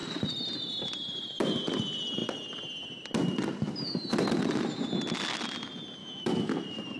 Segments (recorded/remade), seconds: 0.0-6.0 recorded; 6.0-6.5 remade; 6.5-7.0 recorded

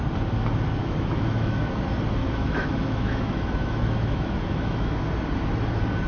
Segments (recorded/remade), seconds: 0.0-0.8 recorded; 0.8-1.7 remade; 1.7-2.2 recorded; 2.2-5.0 remade; 5.0-6.1 recorded

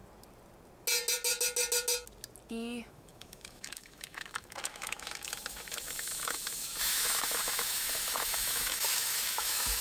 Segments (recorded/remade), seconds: 0.0-2.5 recorded; 2.5-9.8 remade

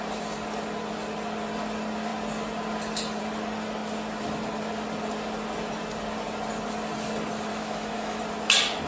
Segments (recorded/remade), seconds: 0.0-7.5 recorded; 7.5-8.2 remade; 8.2-8.9 recorded

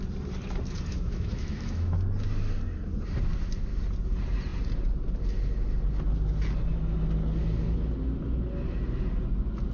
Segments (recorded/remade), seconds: 0.0-0.9 recorded; 0.9-2.0 remade; 2.0-9.7 recorded